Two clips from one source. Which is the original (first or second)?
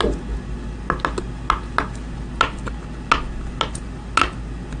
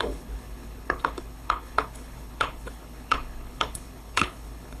first